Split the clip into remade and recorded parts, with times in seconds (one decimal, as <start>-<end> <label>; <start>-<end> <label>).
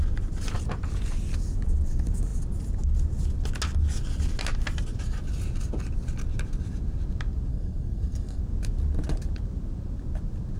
0.0-7.5 recorded; 7.5-8.4 remade; 8.4-10.6 recorded